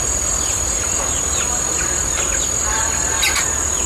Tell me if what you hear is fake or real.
real